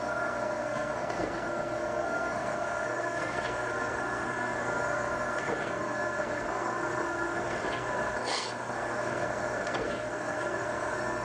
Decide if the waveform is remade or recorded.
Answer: remade